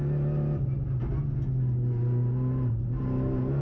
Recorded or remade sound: recorded